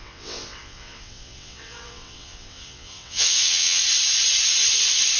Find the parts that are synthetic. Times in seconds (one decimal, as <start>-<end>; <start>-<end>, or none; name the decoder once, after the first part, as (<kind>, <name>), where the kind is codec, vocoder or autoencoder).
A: 0.0-3.8 (vocoder, WaveNeXt)